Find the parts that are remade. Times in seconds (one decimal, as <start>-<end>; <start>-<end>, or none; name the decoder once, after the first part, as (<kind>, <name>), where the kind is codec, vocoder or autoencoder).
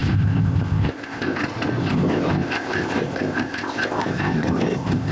0.0-1.4 (codec, ZipCodec); 1.8-5.1